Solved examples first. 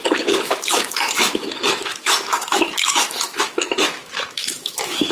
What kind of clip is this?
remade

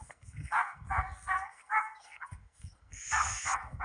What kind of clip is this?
remade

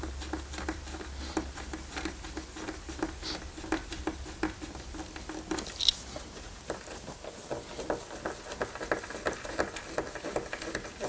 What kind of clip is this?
recorded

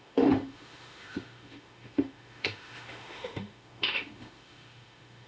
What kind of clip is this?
remade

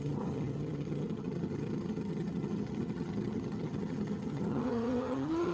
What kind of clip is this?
remade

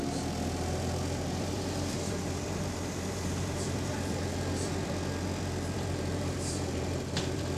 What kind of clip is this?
remade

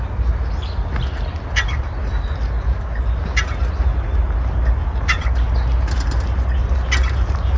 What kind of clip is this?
recorded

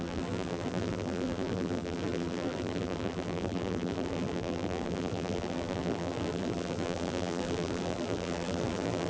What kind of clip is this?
remade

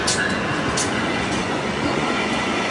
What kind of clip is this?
remade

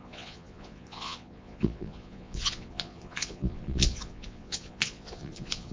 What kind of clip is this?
remade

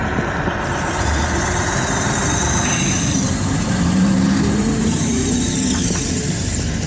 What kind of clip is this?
remade